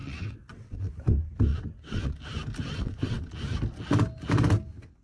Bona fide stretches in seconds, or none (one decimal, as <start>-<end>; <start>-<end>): 0.8-1.5; 2.1-2.7; 3.3-5.0